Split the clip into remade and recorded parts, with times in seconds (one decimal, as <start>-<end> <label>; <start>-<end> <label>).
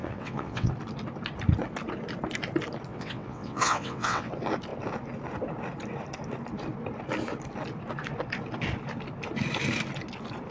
0.0-0.7 remade; 0.7-2.9 recorded; 2.9-4.3 remade; 4.3-10.5 recorded